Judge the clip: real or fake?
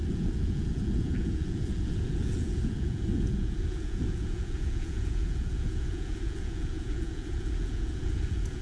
fake